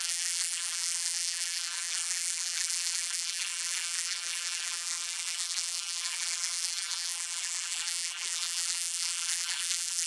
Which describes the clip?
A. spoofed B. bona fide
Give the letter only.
A